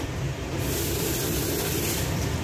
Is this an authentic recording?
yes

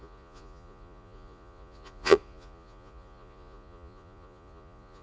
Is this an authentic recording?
no